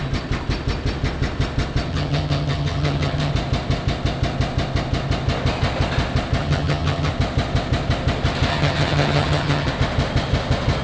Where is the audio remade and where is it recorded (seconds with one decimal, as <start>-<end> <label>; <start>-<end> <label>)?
0.0-1.9 recorded; 1.9-3.3 remade; 3.3-6.4 recorded; 6.4-7.1 remade; 7.1-8.5 recorded; 8.5-9.7 remade; 9.7-10.8 recorded